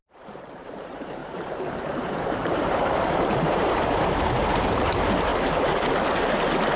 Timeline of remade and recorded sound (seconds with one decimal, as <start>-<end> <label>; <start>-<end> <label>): 0.0-5.3 remade; 5.3-6.8 recorded

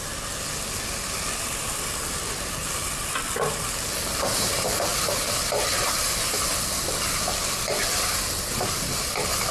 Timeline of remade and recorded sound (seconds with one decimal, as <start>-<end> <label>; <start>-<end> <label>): 0.0-9.5 recorded